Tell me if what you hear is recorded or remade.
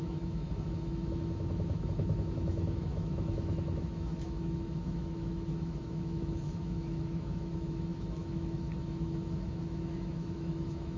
remade